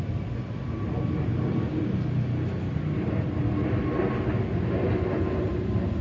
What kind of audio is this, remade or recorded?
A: recorded